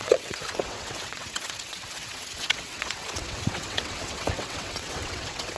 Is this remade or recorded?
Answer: remade